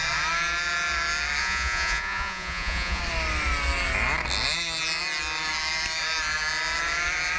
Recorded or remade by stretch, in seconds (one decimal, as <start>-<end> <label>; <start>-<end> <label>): 0.0-1.4 recorded; 1.4-3.0 remade; 3.0-7.4 recorded